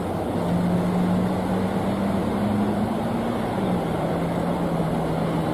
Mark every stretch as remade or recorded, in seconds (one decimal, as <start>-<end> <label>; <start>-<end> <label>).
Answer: 0.0-2.2 recorded; 2.2-4.9 remade; 4.9-5.5 recorded